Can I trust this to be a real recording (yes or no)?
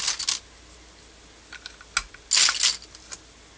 yes